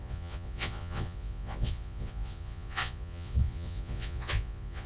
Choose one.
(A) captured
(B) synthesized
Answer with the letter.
B